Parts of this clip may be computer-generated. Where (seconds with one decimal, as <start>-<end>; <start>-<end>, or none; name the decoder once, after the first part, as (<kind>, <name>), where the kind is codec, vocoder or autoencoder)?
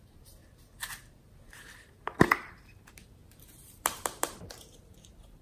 0.0-0.4 (vocoder, BigVGAN v2); 1.2-5.4